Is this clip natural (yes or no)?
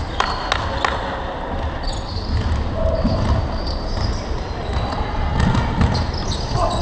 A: yes